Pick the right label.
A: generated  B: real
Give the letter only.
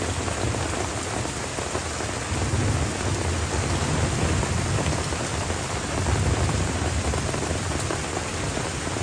B